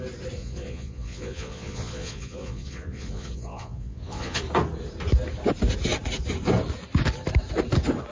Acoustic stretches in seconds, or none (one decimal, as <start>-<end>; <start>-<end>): 0.0-0.4; 4.4-8.1